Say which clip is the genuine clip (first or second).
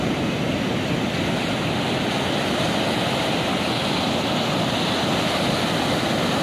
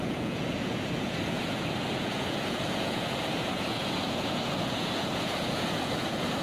first